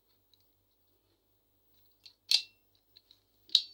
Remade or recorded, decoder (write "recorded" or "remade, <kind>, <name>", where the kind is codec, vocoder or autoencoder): recorded